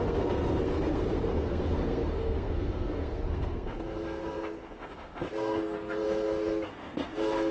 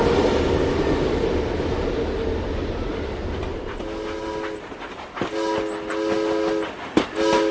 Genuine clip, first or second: second